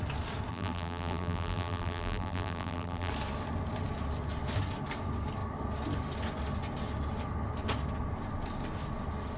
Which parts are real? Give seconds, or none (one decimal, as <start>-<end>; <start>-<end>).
0.0-0.5; 3.1-9.4